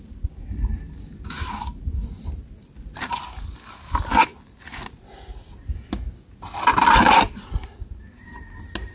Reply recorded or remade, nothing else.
recorded